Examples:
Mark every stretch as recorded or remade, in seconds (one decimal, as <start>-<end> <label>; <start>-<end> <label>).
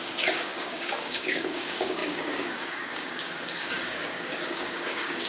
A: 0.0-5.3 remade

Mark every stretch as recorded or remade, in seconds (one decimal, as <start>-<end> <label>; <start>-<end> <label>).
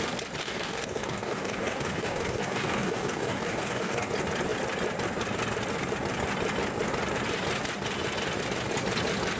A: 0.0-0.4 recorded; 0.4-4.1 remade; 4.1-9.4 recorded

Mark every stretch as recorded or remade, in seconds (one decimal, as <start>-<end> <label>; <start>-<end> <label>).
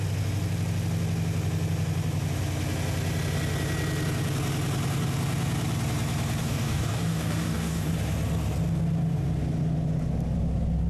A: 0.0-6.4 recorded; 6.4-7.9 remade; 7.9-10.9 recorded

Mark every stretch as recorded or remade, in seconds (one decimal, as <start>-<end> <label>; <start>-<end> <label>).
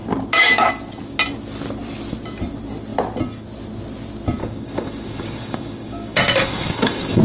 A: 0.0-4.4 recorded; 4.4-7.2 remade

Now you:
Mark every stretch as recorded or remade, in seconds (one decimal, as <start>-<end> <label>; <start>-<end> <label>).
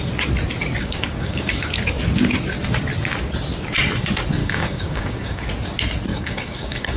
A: 0.0-0.8 recorded; 0.8-1.7 remade; 1.7-4.4 recorded; 4.4-5.5 remade; 5.5-6.1 recorded; 6.1-7.0 remade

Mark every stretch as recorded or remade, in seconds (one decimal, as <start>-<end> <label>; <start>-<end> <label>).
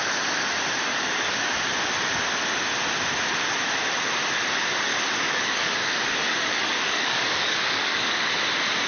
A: 0.0-0.9 recorded; 0.9-1.6 remade; 1.6-4.9 recorded; 4.9-8.3 remade; 8.3-8.9 recorded